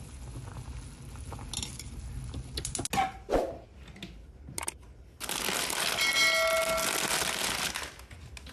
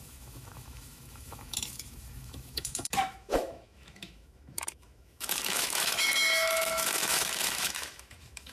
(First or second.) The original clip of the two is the first